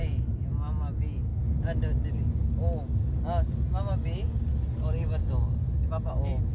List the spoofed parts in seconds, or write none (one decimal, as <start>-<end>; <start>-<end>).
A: none